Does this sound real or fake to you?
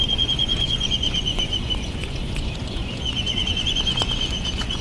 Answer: fake